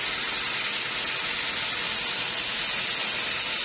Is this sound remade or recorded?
recorded